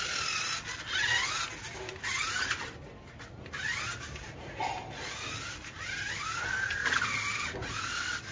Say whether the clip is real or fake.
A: real